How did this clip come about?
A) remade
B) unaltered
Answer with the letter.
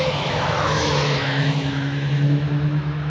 A